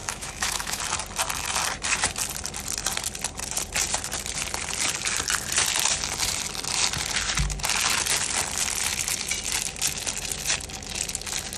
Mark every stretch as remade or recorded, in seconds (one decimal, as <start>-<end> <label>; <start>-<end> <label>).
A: 0.0-0.8 remade; 0.8-11.6 recorded